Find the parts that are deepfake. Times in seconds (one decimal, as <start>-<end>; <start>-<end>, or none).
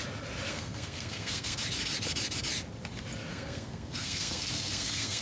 0.5-1.6; 3.3-5.2